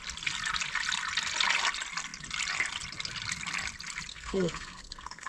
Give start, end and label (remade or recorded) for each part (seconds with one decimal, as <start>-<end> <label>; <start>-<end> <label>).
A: 0.0-4.1 recorded; 4.1-5.3 remade